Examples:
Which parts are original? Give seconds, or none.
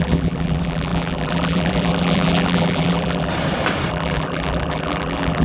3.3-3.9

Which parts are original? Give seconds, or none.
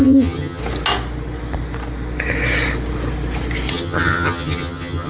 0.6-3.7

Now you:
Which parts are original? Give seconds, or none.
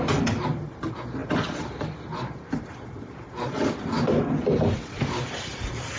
0.0-6.0